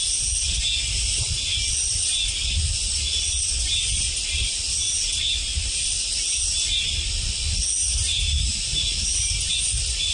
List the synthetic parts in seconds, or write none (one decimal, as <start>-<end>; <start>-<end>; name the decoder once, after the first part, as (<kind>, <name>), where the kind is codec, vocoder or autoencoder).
7.8-9.5 (vocoder, BigVGAN v2)